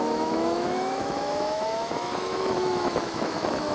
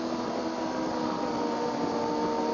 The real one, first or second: second